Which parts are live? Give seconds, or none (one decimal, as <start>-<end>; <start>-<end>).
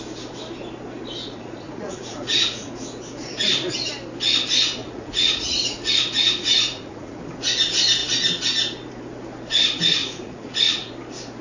0.0-1.2; 2.7-4.8; 7.2-10.0; 10.9-11.4